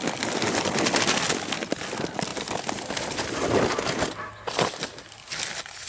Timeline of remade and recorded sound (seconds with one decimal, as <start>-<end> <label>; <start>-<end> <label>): 0.0-5.9 recorded